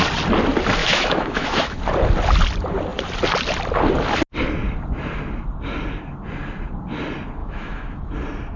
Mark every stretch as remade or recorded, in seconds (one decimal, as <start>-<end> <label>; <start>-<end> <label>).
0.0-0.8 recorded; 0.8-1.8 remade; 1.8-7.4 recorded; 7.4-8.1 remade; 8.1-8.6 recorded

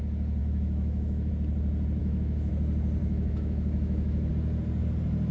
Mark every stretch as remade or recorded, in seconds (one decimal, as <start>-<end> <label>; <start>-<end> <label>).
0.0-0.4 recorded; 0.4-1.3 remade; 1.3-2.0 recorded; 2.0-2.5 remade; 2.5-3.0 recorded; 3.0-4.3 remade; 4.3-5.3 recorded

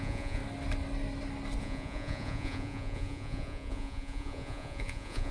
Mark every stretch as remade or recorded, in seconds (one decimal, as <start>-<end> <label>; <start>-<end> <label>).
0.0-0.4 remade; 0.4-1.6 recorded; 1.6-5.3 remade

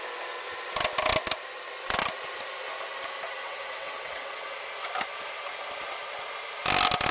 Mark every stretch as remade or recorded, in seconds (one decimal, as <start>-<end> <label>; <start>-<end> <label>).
0.0-3.4 recorded; 3.4-4.6 remade; 4.6-7.1 recorded

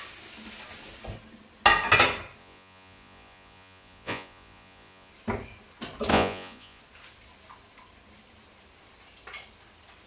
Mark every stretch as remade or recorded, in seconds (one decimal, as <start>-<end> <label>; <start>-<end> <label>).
0.0-2.4 recorded; 2.4-5.1 remade; 5.1-6.1 recorded; 6.1-6.8 remade; 6.8-10.1 recorded

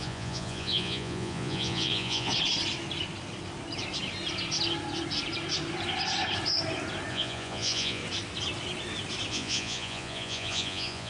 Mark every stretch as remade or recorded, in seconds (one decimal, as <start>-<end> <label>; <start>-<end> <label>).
0.0-2.3 remade; 2.3-7.1 recorded; 7.1-8.0 remade; 8.0-9.3 recorded; 9.3-11.1 remade

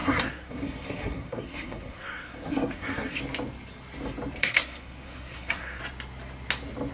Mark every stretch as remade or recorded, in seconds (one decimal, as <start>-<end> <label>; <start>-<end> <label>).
0.0-3.2 remade; 3.2-4.4 recorded; 4.4-5.8 remade; 5.8-6.9 recorded

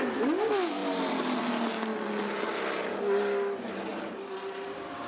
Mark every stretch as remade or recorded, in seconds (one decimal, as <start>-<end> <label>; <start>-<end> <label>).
0.0-3.9 recorded; 3.9-5.1 remade